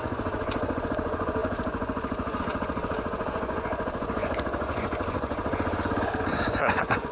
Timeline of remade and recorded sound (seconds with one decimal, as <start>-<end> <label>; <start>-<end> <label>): 0.0-7.1 remade